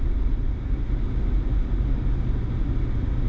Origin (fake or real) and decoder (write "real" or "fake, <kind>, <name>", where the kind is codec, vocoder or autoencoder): real